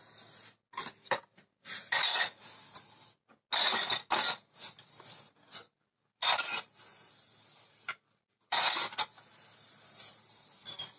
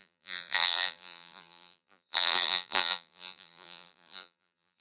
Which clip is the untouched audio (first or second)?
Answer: first